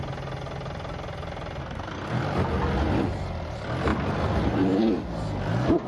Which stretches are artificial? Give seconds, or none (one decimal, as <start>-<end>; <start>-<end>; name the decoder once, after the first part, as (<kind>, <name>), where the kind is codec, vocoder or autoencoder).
1.6-2.2 (codec, SNAC)